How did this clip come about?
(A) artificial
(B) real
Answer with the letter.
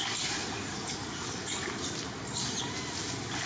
B